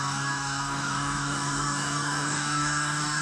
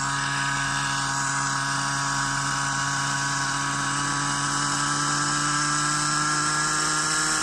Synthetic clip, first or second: first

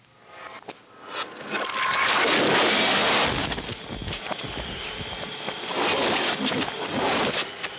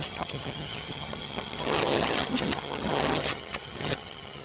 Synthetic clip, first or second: second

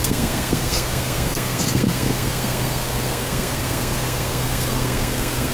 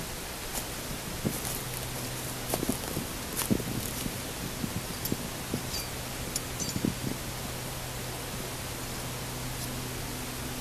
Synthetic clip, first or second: first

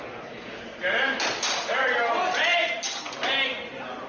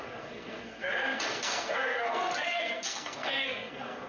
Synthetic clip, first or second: second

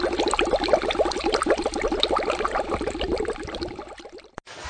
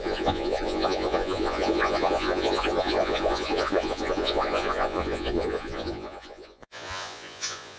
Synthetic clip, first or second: second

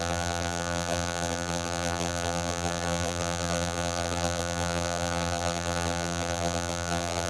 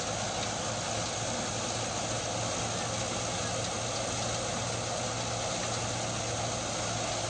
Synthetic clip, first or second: first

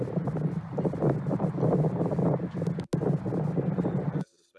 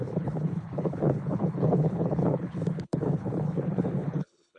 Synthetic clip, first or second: second